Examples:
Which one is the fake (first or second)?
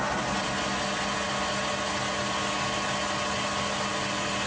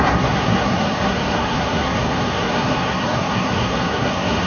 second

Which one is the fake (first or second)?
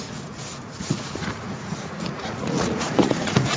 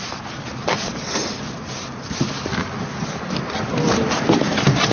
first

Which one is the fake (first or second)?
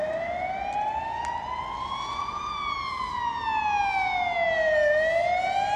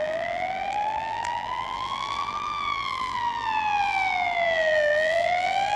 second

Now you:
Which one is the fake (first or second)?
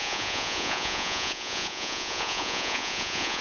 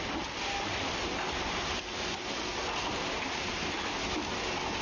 first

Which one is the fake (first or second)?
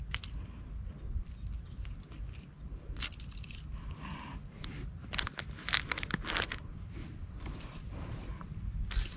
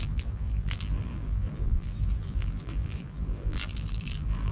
second